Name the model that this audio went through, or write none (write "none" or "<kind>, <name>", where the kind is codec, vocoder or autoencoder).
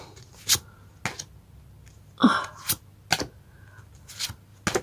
none